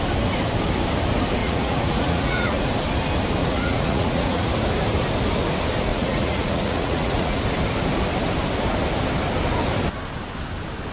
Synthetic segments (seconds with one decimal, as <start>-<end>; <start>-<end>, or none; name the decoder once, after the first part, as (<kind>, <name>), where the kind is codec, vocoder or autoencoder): 1.4-2.7 (vocoder, Vocos); 3.4-4.5; 5.9-7.4